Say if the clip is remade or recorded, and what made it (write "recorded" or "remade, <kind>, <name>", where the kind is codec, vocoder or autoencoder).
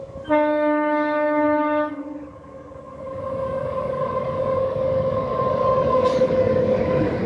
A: remade, codec, DAC